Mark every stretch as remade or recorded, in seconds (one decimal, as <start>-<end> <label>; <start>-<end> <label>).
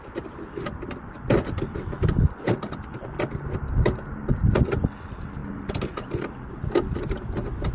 0.0-7.7 recorded